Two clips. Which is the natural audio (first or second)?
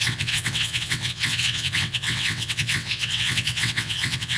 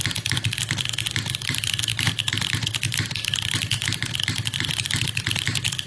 second